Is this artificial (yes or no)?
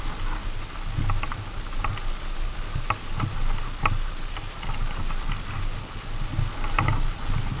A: no